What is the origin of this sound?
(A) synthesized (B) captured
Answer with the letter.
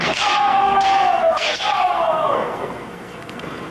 A